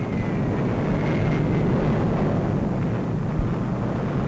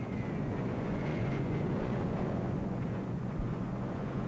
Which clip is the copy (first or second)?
second